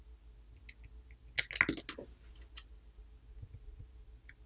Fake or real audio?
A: real